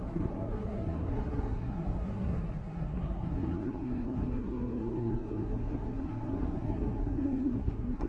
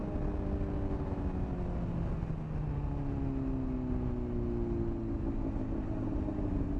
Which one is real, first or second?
second